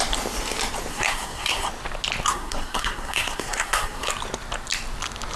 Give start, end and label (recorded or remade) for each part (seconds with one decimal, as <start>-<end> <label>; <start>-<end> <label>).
0.0-0.9 recorded; 0.9-1.7 remade; 1.7-2.3 recorded; 2.3-4.1 remade; 4.1-5.4 recorded